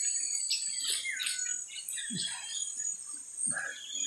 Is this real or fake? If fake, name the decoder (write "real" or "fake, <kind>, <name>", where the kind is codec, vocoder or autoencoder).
real